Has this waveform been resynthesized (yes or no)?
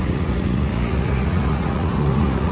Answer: yes